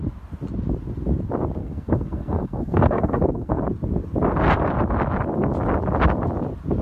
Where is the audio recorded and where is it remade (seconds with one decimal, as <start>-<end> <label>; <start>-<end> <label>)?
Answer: 0.0-1.6 recorded; 1.6-3.6 remade; 3.6-6.8 recorded